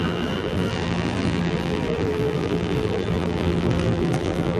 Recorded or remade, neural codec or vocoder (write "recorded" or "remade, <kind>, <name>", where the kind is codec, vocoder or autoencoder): remade, vocoder, BigVGAN v2